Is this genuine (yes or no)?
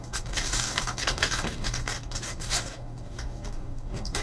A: no